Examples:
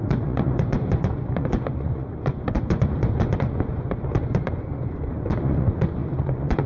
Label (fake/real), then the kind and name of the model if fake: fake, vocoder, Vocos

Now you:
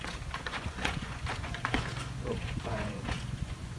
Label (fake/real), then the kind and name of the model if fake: fake, vocoder, Vocos